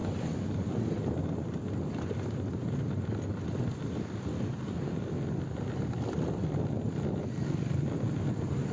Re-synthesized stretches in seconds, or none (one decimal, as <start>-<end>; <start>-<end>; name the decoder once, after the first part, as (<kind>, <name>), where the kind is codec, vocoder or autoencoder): 0.0-3.2 (vocoder, BigVGAN v2); 4.3-4.9